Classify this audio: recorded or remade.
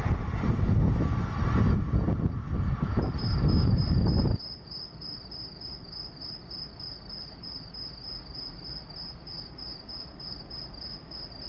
recorded